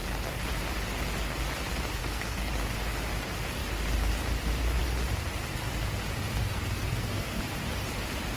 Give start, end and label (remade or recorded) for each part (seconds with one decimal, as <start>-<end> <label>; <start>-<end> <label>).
0.0-2.0 recorded; 2.0-2.5 remade; 2.5-6.4 recorded; 6.4-7.4 remade; 7.4-8.4 recorded